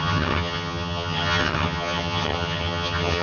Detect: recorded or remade remade